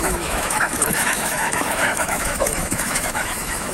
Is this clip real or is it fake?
fake